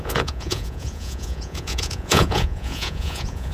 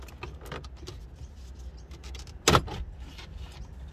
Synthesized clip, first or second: first